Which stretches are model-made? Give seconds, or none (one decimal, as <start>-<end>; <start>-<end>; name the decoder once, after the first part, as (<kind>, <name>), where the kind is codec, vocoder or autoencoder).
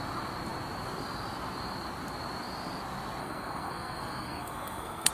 3.2-5.1 (codec, SNAC)